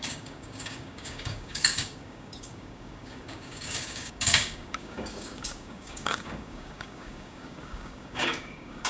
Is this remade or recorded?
remade